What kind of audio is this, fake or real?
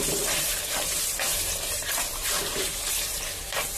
fake